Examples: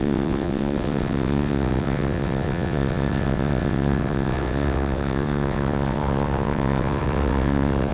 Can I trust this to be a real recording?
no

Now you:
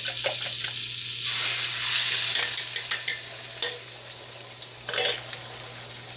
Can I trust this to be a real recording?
yes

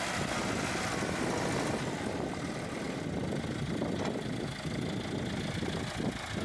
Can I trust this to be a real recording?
yes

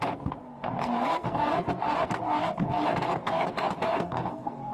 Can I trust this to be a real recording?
no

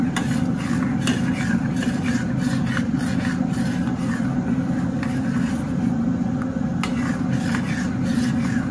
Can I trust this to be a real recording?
yes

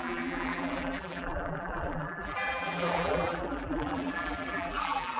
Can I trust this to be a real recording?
no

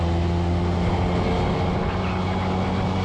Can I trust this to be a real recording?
yes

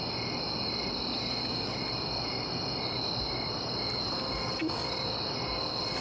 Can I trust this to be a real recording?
yes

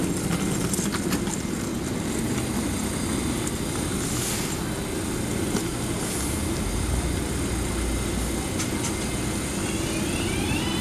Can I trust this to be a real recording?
yes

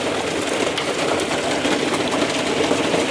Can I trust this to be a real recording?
yes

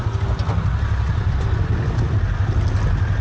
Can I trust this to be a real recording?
yes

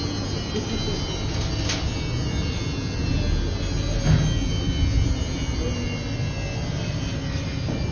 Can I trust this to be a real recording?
yes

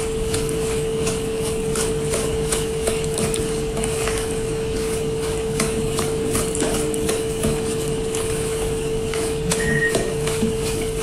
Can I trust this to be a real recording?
no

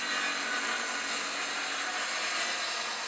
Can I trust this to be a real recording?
yes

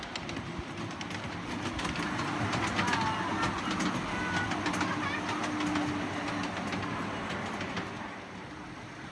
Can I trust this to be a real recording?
yes